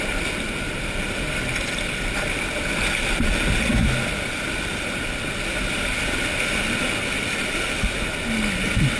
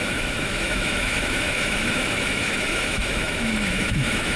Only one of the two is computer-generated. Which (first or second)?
second